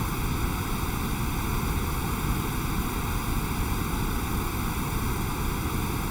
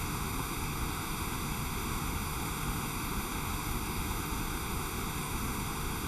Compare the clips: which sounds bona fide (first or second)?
first